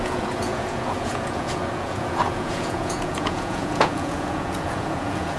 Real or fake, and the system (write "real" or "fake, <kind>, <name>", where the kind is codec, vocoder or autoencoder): fake, vocoder, Vocos